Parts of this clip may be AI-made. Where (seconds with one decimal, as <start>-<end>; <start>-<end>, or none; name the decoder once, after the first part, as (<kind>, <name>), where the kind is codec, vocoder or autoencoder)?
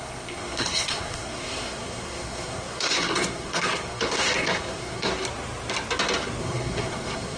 0.0-5.1 (codec, SNAC); 6.4-7.4